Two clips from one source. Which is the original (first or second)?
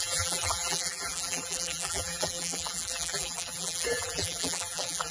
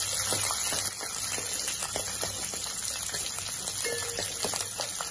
second